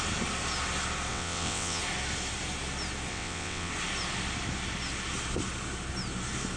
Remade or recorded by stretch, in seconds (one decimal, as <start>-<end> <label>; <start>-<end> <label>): 0.0-1.1 recorded; 1.1-1.8 remade; 1.8-3.1 recorded; 3.1-3.7 remade; 3.7-6.6 recorded